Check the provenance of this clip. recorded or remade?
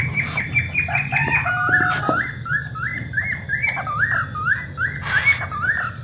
recorded